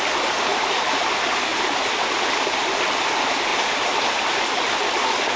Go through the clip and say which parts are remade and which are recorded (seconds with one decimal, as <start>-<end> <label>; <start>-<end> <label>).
0.0-1.5 recorded; 1.5-3.1 remade; 3.1-3.5 recorded; 3.5-4.1 remade; 4.1-5.4 recorded